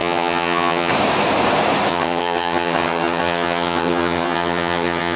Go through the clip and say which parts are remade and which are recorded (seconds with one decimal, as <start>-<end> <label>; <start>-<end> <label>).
0.0-0.9 remade; 0.9-1.9 recorded; 1.9-5.2 remade